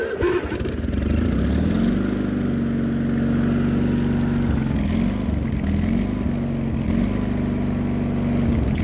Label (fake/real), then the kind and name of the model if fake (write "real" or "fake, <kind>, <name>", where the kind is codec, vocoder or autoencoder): real